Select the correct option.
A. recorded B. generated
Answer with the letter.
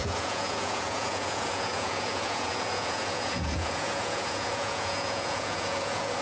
B